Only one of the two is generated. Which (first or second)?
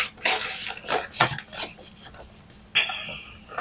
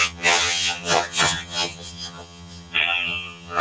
second